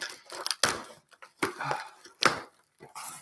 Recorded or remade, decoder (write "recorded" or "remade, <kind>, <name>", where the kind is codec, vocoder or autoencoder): recorded